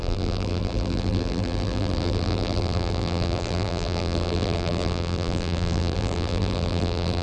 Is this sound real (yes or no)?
no